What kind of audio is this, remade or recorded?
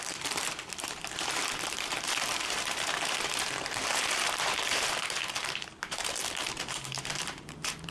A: remade